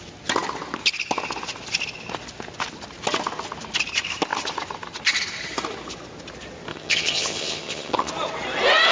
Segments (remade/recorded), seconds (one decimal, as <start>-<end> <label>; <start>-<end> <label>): 0.0-6.7 recorded; 6.7-8.1 remade; 8.1-8.9 recorded